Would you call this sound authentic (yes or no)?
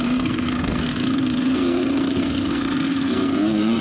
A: no